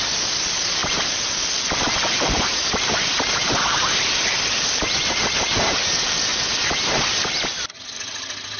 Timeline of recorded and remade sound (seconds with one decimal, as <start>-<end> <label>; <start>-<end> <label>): 0.0-8.6 recorded